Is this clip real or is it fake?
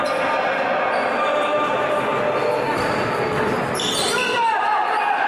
real